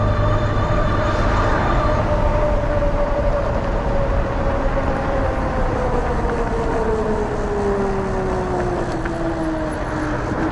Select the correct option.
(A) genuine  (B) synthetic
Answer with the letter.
A